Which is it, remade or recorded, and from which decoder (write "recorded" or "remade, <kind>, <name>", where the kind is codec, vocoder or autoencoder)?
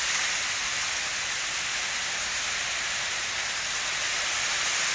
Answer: recorded